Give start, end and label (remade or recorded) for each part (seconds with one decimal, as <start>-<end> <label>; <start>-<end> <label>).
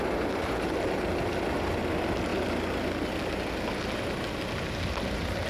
0.0-5.5 recorded